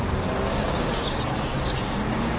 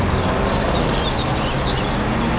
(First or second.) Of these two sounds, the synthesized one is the first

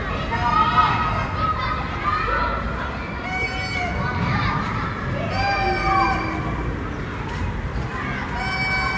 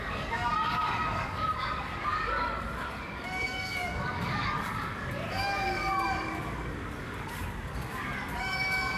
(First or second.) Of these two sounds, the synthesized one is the second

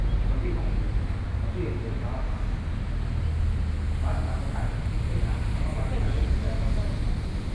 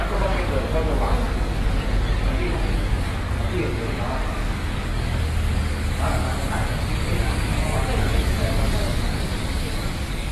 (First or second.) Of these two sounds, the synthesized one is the second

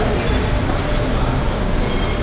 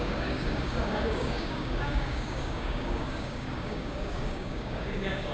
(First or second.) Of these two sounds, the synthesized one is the second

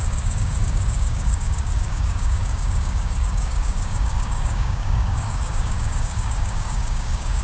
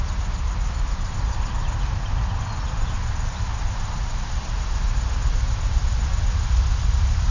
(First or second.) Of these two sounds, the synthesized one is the first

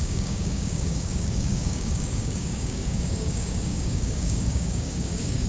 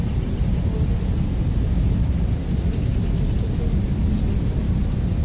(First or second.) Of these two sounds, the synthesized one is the first